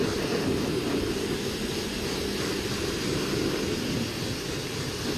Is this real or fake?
real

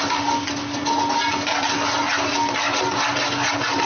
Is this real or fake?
real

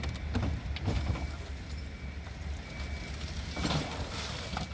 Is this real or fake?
real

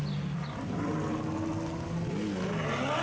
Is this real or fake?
real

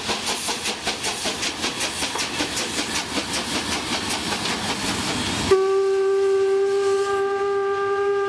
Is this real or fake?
real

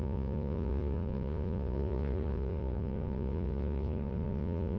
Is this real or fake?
fake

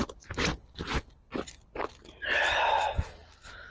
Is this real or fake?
real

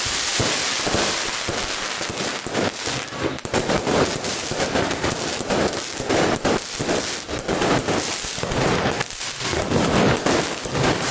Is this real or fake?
fake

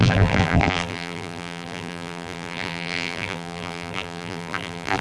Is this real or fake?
fake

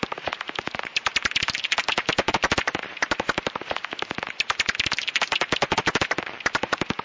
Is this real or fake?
fake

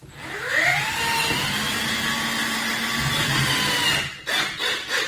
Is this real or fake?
real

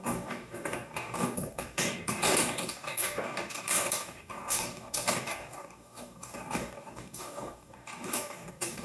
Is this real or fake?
fake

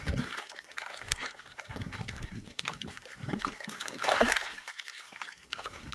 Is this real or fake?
fake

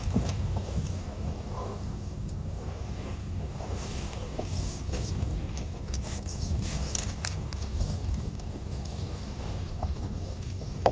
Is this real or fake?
fake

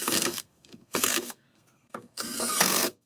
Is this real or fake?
fake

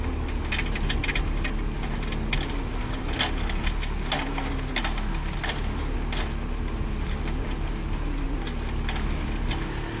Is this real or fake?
real